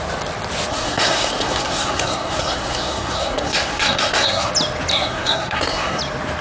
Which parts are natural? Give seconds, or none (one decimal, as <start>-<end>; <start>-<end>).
0.0-0.7; 4.5-4.9; 6.0-6.4